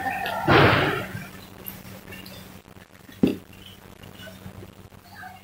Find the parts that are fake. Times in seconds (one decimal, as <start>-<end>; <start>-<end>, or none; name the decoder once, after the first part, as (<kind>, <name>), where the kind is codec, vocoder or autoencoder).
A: none